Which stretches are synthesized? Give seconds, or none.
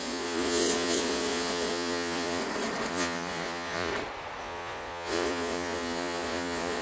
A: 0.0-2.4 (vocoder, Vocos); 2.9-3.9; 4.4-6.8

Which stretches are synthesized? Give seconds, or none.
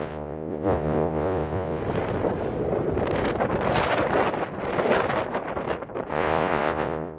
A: 0.0-1.8 (vocoder, Vocos); 6.1-7.2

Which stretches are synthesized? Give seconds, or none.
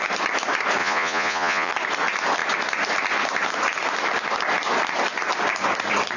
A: 0.8-1.7 (vocoder, Vocos)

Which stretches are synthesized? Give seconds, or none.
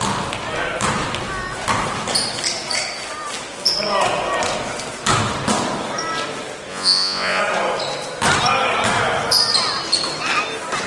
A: 6.7-7.4 (vocoder, Vocos)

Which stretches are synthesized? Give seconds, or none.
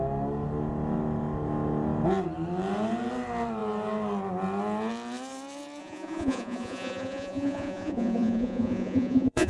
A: 5.8-9.5 (vocoder, Vocos)